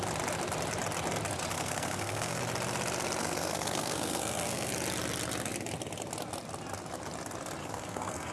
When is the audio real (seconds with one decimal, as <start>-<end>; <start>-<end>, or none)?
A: 0.0-1.5; 2.4-3.2; 4.7-7.6